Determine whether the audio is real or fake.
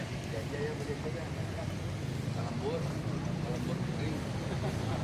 real